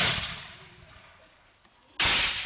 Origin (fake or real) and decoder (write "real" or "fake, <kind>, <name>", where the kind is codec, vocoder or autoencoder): real